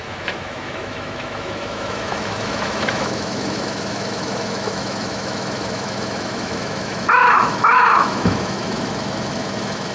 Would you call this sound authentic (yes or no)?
no